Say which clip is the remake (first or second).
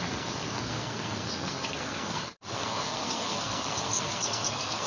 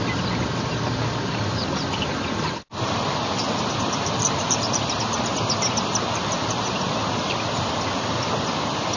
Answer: first